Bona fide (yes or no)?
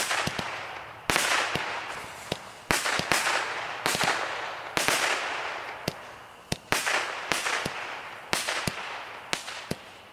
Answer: yes